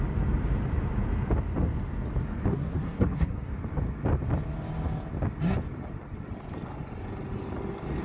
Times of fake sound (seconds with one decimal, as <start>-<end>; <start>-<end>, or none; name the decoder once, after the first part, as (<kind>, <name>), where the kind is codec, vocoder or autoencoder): 2.5-3.5 (codec, SNAC)